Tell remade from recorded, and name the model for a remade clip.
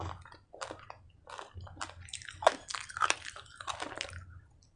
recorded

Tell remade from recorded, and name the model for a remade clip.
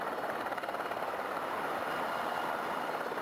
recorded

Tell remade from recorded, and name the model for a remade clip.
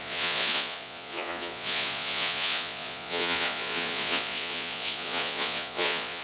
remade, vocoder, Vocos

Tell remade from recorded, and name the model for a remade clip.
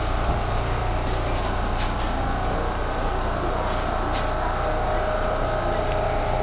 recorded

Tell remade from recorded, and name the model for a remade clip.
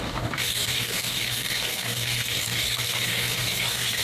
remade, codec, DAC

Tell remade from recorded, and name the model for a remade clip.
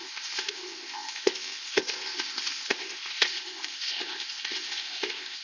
remade, codec, ZipCodec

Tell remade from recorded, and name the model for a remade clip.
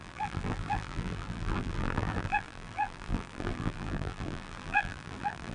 remade, vocoder, BigVGAN v2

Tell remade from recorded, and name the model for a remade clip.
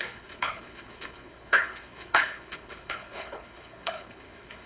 remade, codec, HILCodec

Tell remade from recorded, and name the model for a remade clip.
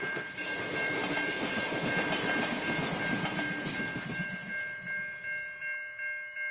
recorded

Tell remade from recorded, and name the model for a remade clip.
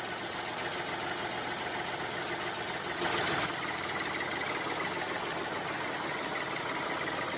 recorded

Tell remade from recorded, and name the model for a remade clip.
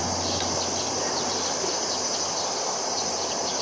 recorded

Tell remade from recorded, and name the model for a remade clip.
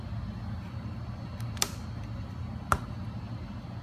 recorded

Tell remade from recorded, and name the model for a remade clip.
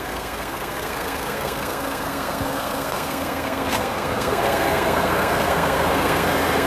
remade, codec, SNAC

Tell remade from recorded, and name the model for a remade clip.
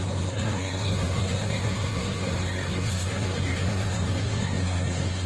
remade, codec, SNAC